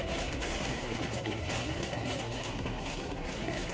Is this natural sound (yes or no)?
no